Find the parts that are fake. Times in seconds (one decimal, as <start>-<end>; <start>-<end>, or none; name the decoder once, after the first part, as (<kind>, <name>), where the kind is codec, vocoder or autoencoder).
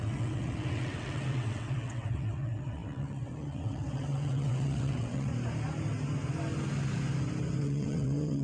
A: 0.0-5.3 (vocoder, WaveNeXt); 7.6-8.4